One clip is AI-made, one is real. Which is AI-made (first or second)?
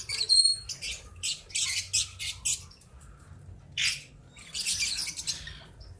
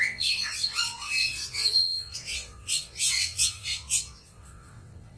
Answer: second